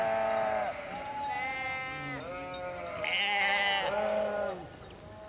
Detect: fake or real real